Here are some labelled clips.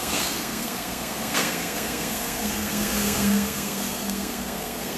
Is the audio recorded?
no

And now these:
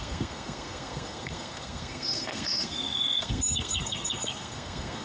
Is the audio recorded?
no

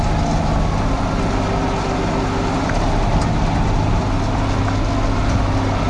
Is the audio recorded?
yes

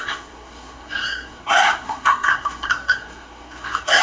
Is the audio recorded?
no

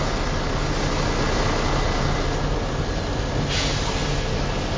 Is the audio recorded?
yes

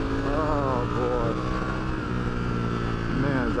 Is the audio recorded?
yes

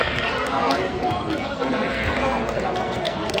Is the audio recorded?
no